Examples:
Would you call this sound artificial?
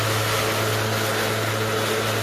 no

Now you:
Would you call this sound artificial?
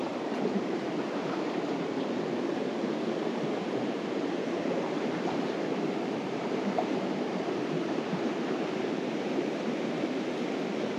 yes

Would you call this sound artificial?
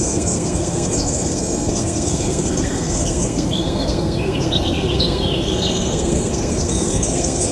yes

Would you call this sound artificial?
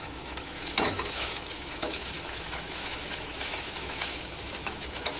yes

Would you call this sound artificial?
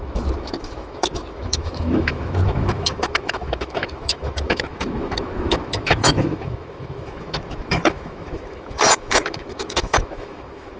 yes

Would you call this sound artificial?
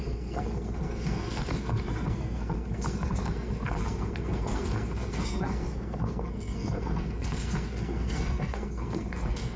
yes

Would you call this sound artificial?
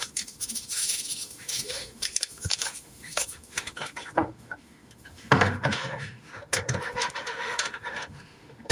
yes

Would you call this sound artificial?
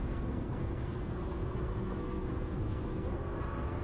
yes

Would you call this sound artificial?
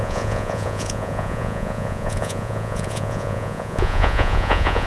yes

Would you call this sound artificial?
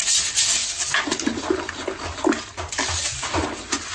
no